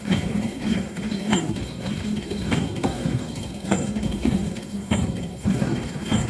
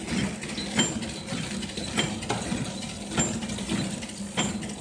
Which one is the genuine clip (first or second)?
second